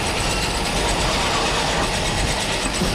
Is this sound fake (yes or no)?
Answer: no